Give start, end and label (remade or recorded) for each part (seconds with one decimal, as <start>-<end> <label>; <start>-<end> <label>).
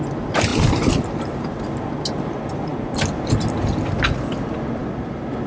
0.0-5.5 recorded